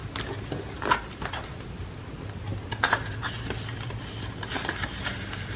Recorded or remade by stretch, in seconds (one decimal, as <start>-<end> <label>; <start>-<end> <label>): 0.0-5.6 recorded